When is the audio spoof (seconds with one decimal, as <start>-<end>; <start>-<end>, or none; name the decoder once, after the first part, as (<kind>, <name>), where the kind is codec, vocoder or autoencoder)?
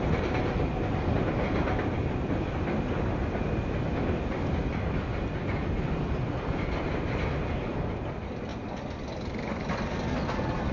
none